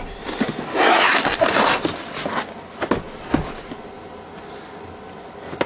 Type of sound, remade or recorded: recorded